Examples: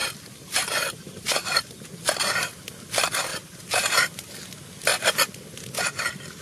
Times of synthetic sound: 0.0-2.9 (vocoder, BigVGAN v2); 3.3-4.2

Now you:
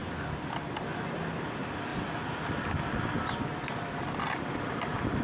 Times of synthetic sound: none

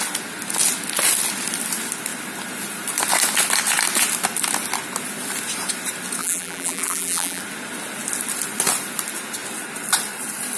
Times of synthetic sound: 6.2-7.4 (vocoder, BigVGAN v2)

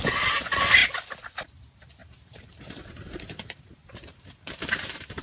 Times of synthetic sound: 2.0-5.2 (vocoder, BigVGAN v2)

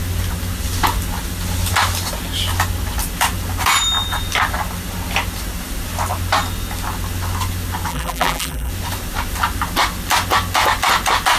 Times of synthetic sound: 7.9-8.7 (vocoder, BigVGAN v2)

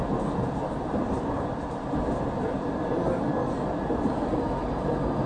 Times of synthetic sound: 1.0-4.0 (vocoder, BigVGAN v2)